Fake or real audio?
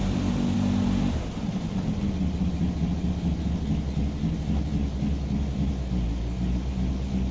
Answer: real